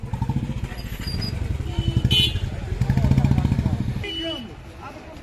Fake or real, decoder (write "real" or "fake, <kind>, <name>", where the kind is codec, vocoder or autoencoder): real